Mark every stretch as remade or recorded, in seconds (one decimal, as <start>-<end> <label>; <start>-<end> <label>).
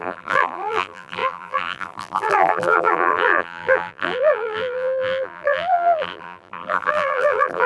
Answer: 0.0-7.7 remade